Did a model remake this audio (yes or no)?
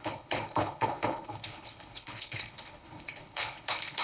yes